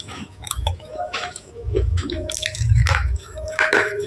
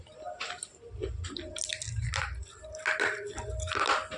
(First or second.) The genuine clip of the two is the second